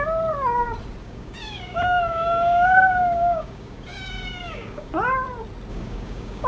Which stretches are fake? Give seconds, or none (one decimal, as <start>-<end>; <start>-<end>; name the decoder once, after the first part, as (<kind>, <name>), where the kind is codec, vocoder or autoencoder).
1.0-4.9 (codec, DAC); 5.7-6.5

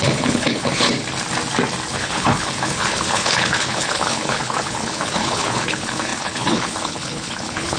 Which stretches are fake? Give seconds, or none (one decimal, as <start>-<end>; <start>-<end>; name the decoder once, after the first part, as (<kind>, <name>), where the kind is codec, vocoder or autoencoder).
0.0-0.9 (codec, HILCodec); 1.9-7.8

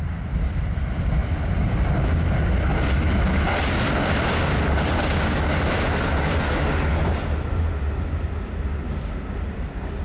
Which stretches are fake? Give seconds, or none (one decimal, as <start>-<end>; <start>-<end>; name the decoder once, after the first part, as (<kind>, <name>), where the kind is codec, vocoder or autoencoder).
none